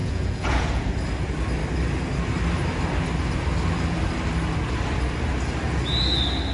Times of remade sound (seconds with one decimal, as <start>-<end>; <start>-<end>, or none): 0.0-0.9